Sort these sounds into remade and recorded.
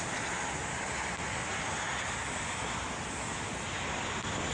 recorded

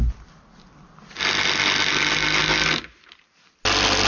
recorded